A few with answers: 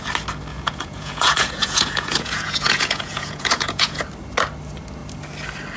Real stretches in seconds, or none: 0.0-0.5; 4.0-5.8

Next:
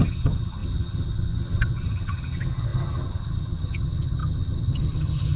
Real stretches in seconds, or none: none

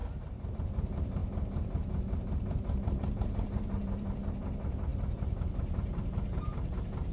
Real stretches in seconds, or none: 0.0-0.5; 1.2-3.0

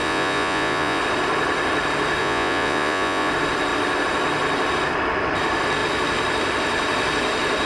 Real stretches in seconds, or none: 1.0-2.2; 3.3-7.7

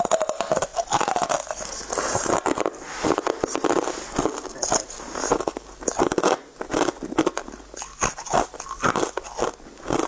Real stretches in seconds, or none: 0.0-10.1

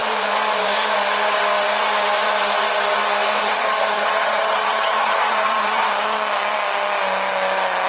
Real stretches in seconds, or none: 0.0-3.4; 5.9-7.9

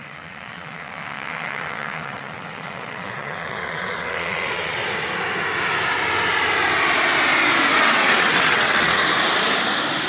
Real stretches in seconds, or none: 4.8-7.8; 9.0-10.1